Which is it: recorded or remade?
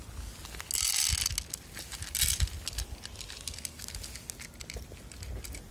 recorded